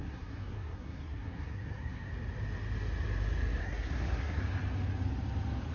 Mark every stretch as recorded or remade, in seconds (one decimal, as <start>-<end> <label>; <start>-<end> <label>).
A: 0.0-2.1 remade; 2.1-3.6 recorded; 3.6-4.4 remade; 4.4-5.7 recorded